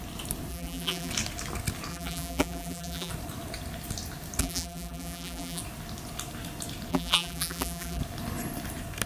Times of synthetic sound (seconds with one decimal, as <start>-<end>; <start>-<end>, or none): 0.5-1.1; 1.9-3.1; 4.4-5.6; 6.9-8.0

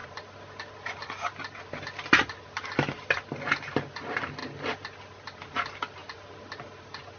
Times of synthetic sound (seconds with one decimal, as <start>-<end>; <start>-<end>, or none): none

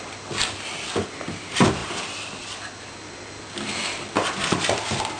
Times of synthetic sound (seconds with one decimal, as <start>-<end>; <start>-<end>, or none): 1.8-2.9

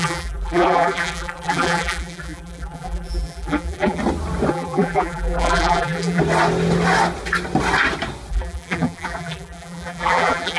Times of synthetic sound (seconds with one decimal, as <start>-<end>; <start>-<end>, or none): 0.0-4.0; 4.5-6.2; 8.3-10.6

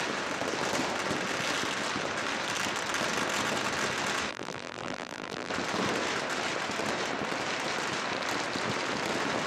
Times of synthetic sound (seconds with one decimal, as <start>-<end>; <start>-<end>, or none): 4.3-5.5

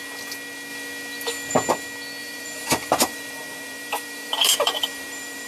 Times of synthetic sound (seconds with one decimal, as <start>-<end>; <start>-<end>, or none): 2.2-5.5

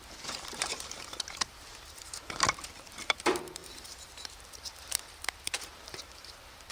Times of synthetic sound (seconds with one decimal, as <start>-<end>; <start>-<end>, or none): 0.0-6.7